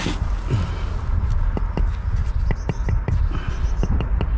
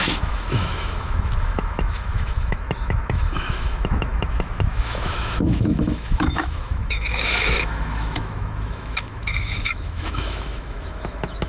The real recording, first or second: first